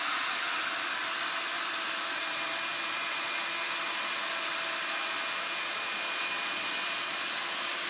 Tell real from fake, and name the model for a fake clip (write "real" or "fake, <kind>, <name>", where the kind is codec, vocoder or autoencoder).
real